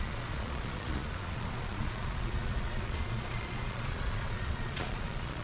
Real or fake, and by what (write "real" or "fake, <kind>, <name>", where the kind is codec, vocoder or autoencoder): fake, vocoder, Vocos